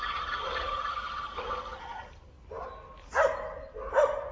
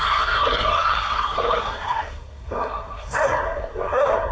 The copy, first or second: second